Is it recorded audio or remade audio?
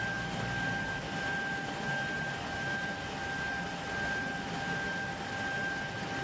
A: recorded